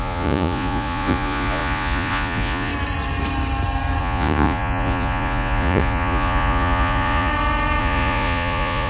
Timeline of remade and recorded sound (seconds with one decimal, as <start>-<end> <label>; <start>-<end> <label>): 0.0-2.7 remade; 2.7-4.0 recorded; 4.0-7.3 remade; 7.3-7.8 recorded; 7.8-8.9 remade